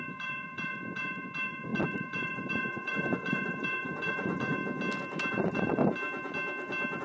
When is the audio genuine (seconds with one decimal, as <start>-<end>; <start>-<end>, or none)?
4.6-5.3; 5.8-7.0